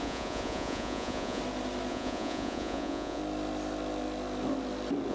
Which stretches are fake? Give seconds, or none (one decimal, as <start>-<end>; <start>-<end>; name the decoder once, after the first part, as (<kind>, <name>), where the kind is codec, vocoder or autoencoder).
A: 0.0-1.4 (vocoder, Vocos); 1.9-3.2